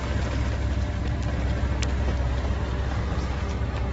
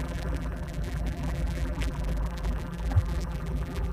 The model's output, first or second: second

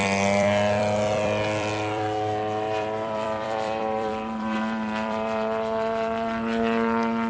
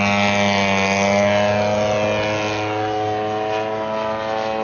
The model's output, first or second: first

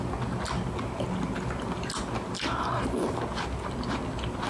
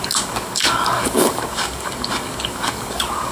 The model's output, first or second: second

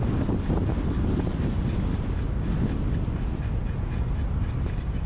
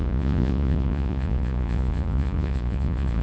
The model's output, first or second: second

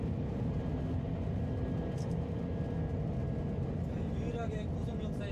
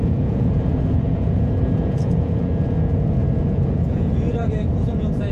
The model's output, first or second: second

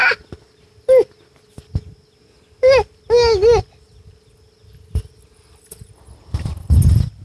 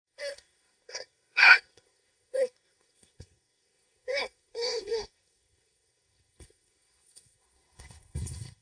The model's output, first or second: second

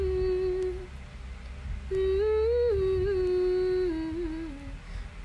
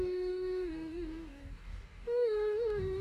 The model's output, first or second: second